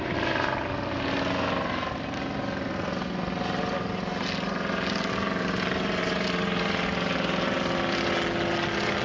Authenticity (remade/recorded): recorded